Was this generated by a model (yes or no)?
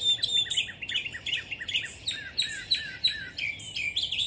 no